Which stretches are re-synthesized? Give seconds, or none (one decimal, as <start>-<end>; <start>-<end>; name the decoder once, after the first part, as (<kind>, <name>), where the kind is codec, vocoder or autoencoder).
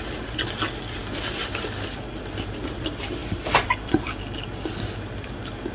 none